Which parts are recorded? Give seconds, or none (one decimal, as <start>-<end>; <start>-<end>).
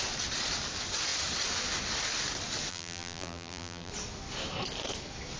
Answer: 0.0-2.7; 3.9-5.4